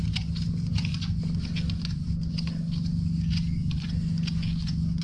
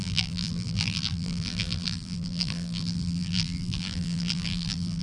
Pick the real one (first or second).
first